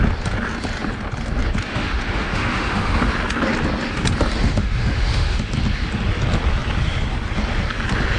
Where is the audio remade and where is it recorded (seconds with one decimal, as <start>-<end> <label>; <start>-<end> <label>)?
0.0-1.7 recorded; 1.7-3.1 remade; 3.1-4.4 recorded; 4.4-5.5 remade; 5.5-8.2 recorded